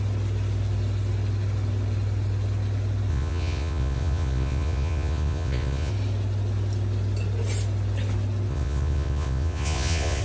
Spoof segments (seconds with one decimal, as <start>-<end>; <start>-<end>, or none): 3.1-5.9; 8.5-10.2